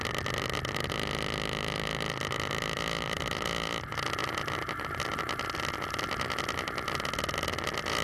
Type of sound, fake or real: real